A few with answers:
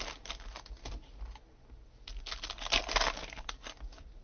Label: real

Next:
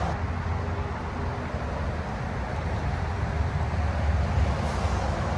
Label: real